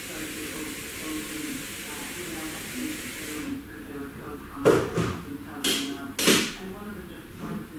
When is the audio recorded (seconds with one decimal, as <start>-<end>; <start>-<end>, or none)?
0.0-6.9

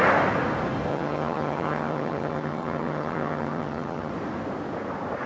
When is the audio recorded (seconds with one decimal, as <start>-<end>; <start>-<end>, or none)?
0.0-0.9; 4.1-5.3

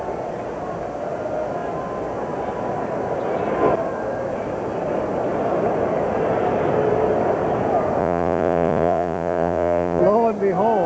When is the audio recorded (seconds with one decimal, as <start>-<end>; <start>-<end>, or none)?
0.0-8.0; 10.0-10.9

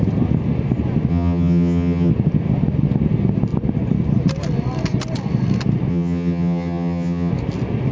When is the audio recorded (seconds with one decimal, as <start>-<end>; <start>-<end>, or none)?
0.0-1.1; 2.1-5.9; 7.3-7.9

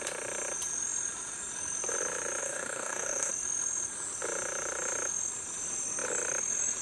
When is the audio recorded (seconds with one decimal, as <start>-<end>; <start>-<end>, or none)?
0.0-2.4; 3.3-6.8

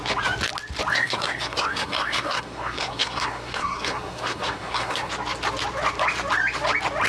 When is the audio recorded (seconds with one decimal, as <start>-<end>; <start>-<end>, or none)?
0.0-0.9; 5.1-7.1